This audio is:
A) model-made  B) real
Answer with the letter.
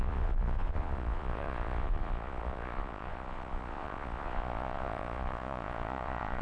A